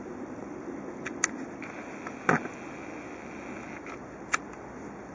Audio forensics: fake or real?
real